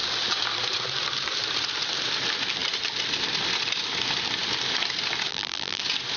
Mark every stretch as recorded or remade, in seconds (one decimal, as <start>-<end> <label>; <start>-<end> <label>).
0.0-5.3 recorded; 5.3-5.8 remade; 5.8-6.2 recorded